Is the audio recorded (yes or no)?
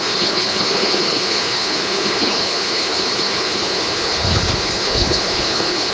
no